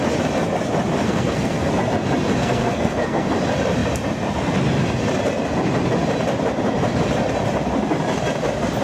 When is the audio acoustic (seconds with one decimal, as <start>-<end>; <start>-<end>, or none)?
0.0-1.0; 1.7-2.4; 3.3-8.8